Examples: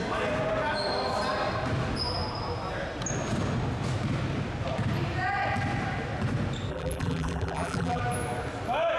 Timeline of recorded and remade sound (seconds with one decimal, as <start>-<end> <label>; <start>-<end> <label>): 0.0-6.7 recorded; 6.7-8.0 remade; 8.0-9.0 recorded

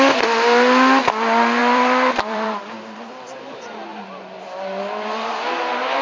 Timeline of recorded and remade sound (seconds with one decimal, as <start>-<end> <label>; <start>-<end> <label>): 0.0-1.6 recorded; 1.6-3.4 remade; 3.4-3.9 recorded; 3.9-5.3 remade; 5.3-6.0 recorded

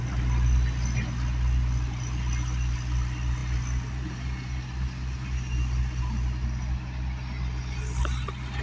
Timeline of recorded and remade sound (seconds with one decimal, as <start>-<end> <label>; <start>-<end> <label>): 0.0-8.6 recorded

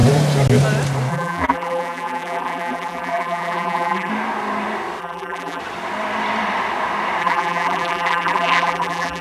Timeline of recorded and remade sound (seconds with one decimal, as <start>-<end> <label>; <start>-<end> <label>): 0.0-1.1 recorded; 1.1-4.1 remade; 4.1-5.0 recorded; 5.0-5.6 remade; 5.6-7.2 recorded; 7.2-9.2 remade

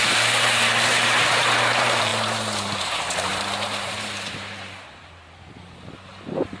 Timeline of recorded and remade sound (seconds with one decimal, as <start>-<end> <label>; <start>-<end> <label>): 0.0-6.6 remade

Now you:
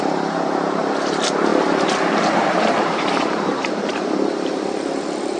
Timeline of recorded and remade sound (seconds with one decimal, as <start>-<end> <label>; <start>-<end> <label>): 0.0-5.4 remade

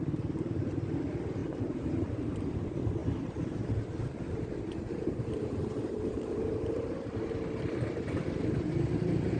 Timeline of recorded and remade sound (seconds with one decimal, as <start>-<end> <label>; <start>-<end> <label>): 0.0-1.4 recorded; 1.4-2.5 remade; 2.5-3.0 recorded; 3.0-7.3 remade; 7.3-9.4 recorded

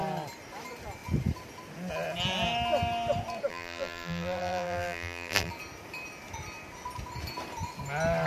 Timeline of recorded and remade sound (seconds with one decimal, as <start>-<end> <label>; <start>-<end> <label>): 0.0-3.5 recorded; 3.5-5.5 remade; 5.5-8.3 recorded